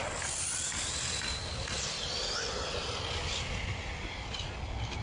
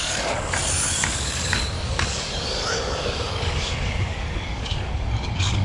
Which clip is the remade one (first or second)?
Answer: second